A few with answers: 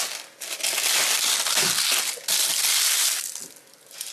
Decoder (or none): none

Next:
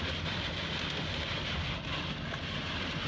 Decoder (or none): none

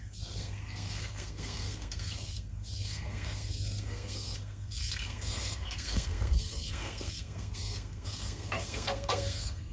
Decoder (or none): codec, SNAC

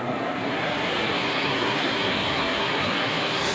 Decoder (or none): codec, SNAC